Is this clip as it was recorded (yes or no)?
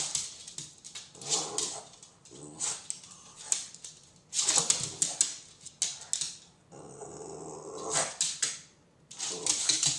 yes